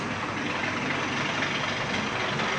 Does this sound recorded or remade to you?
recorded